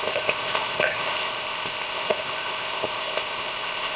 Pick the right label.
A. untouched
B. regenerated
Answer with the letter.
B